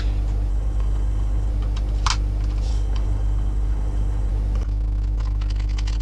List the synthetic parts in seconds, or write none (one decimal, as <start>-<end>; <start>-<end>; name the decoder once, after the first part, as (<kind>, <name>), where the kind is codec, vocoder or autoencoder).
0.5-1.5 (codec, HILCodec); 2.7-4.3